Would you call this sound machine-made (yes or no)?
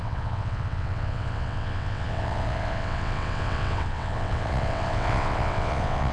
yes